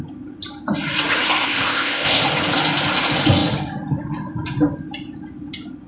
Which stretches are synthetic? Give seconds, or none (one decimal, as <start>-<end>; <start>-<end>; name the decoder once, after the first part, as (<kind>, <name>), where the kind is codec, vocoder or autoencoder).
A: 1.4-2.2 (codec, ZipCodec)